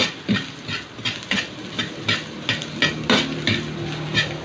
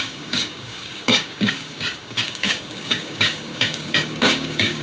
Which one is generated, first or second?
second